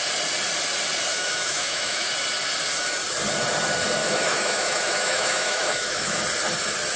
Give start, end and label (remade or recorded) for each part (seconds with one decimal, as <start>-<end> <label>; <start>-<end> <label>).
0.0-1.1 recorded; 1.1-2.1 remade; 2.1-4.0 recorded; 4.0-6.2 remade; 6.2-7.0 recorded